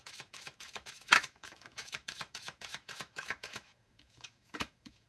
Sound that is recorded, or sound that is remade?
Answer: remade